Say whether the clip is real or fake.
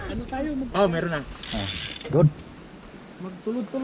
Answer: real